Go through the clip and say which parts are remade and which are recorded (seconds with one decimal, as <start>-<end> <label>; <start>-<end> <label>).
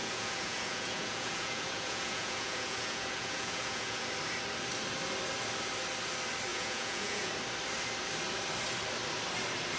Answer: 0.0-4.1 remade; 4.1-6.5 recorded; 6.5-7.3 remade; 7.3-9.8 recorded